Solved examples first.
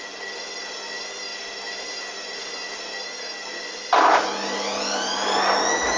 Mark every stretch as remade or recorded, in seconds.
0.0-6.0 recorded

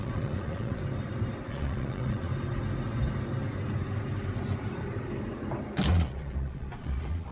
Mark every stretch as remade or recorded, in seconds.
0.0-0.8 remade; 0.8-1.5 recorded; 1.5-2.3 remade; 2.3-5.9 recorded; 5.9-7.3 remade

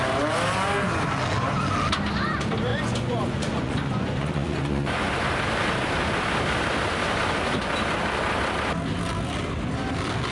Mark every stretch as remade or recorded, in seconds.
0.0-2.7 recorded; 2.7-5.1 remade; 5.1-10.3 recorded

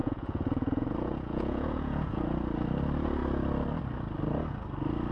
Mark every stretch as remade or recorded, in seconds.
0.0-2.2 remade; 2.2-5.1 recorded

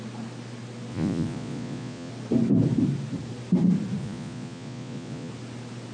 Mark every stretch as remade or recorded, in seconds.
0.0-0.9 recorded; 0.9-2.1 remade; 2.1-4.0 recorded; 4.0-5.3 remade; 5.3-5.9 recorded